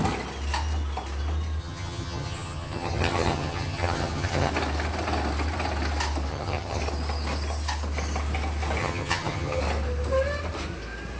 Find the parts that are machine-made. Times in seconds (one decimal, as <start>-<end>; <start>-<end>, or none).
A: 1.6-4.5; 6.3-6.8; 8.8-9.6